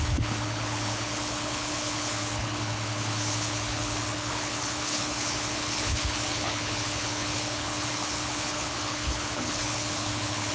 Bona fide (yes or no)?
no